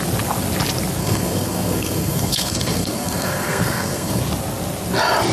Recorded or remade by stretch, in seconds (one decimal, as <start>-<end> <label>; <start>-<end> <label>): 0.0-1.0 recorded; 1.0-4.2 remade; 4.2-5.3 recorded